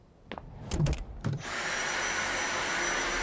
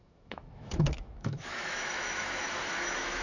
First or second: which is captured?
first